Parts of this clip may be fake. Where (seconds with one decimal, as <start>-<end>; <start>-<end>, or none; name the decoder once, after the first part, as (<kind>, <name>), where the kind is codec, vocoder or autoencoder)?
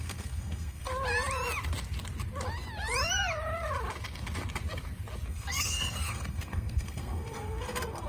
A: 0.0-0.9 (codec, SNAC); 5.3-8.1